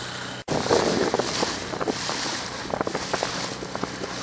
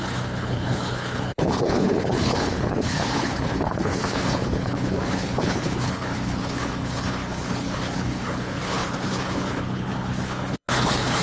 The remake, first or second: second